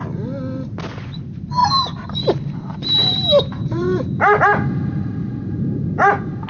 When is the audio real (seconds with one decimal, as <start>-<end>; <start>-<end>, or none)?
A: 0.0-3.0; 5.9-6.5